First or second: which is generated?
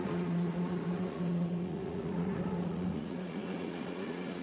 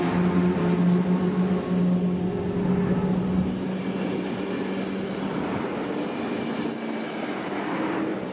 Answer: first